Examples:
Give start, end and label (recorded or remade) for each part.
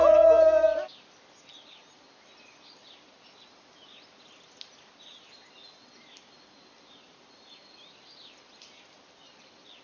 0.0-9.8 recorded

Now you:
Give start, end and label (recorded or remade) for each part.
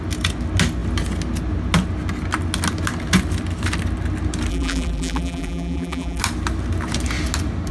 0.0-4.5 recorded; 4.5-6.2 remade; 6.2-7.7 recorded